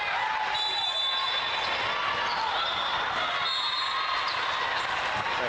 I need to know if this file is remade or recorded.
recorded